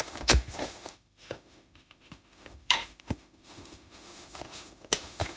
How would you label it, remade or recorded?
remade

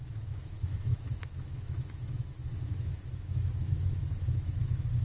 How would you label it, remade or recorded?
remade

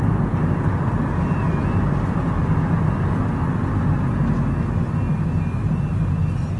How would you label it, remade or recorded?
recorded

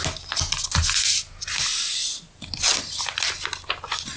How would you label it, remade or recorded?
recorded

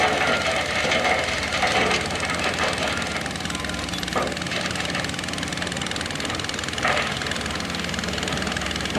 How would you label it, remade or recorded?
recorded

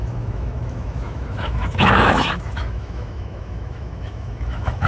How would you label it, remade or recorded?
remade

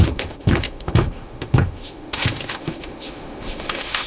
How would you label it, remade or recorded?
remade